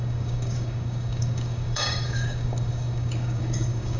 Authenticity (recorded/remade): remade